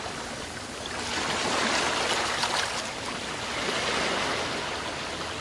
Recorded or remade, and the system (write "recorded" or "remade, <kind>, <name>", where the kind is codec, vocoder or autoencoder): recorded